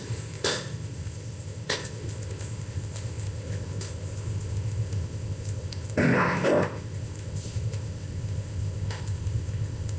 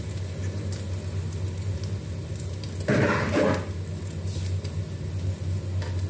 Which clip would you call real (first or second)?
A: second